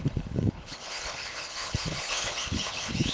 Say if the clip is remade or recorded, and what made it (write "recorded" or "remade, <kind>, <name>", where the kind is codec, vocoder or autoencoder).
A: remade, codec, HILCodec